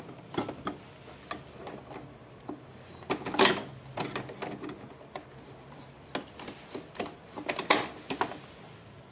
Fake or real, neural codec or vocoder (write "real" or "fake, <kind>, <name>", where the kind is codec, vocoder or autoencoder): real